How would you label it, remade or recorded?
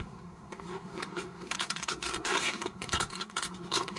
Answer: remade